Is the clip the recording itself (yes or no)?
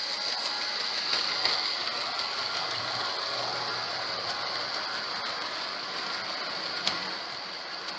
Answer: yes